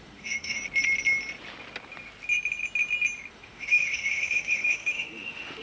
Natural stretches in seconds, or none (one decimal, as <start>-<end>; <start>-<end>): 0.6-3.3